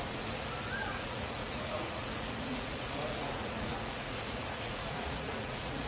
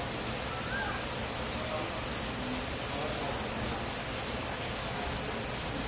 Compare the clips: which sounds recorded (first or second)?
second